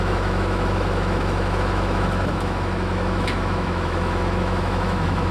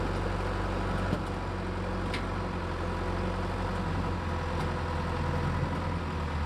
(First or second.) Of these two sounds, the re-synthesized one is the first